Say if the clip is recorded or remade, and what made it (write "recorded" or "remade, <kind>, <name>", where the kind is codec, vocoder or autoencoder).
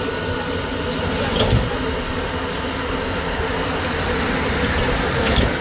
recorded